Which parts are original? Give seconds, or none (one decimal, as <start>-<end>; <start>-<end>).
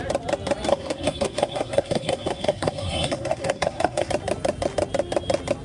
0.0-0.7; 4.1-5.6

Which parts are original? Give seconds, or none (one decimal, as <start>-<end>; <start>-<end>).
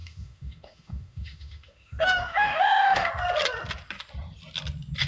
3.1-5.1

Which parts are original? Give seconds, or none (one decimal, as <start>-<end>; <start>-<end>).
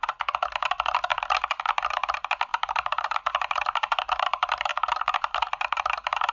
0.0-2.5; 4.2-4.7